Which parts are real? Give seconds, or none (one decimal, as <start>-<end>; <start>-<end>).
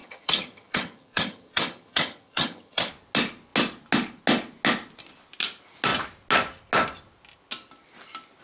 2.9-8.4